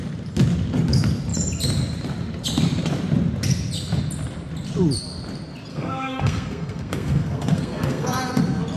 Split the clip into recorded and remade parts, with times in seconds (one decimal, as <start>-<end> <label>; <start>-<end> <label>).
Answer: 0.0-5.7 recorded; 5.7-8.4 remade; 8.4-8.8 recorded